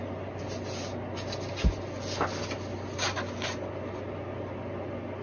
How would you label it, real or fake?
real